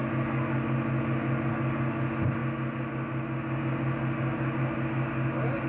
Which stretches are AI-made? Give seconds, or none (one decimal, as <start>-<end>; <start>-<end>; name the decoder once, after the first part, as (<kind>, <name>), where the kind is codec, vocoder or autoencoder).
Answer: none